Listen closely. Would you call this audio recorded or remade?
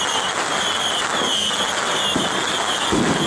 recorded